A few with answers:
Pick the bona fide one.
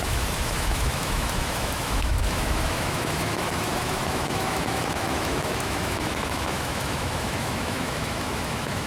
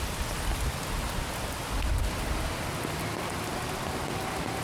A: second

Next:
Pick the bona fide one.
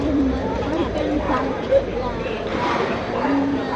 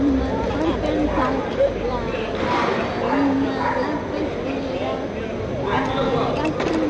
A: second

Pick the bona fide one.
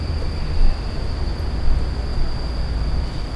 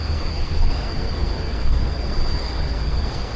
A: first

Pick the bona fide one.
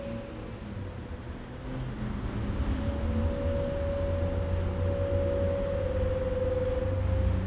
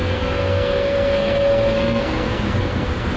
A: first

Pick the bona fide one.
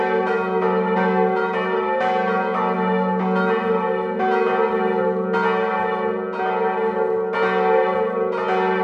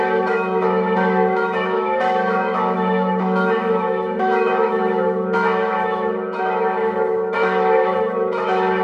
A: first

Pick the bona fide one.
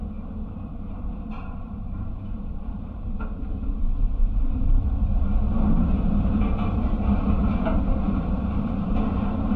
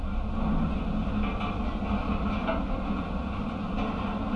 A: second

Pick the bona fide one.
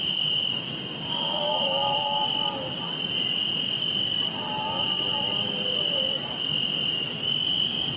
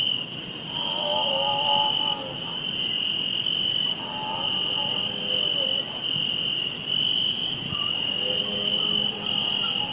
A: second